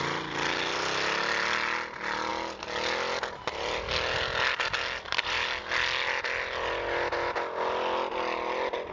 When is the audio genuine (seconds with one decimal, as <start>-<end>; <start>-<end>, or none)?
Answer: 0.0-8.9